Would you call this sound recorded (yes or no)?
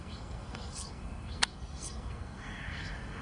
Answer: no